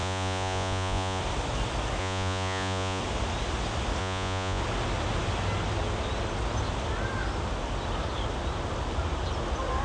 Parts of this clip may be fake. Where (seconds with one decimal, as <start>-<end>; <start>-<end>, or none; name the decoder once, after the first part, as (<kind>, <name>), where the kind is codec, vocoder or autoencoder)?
0.0-1.2 (vocoder, Vocos); 2.0-3.0; 4.0-4.6